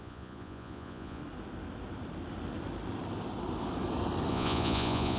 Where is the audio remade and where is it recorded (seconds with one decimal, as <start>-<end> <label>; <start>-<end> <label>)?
0.0-1.2 remade; 1.2-4.3 recorded; 4.3-5.2 remade